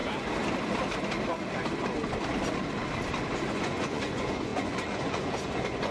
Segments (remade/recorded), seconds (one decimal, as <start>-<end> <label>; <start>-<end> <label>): 0.0-3.5 recorded; 3.5-5.9 remade

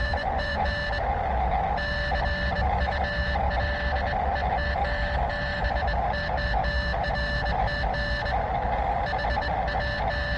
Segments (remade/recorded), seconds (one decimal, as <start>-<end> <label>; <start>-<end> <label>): 0.0-0.7 remade; 0.7-10.4 recorded

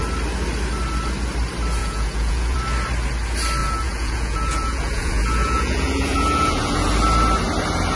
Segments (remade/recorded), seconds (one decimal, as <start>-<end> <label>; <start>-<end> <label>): 0.0-1.8 recorded; 1.8-2.6 remade; 2.6-3.6 recorded; 3.6-6.9 remade; 6.9-8.0 recorded

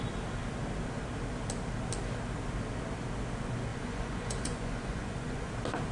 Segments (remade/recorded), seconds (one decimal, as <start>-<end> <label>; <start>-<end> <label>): 0.0-3.7 recorded; 3.7-5.5 remade; 5.5-5.9 recorded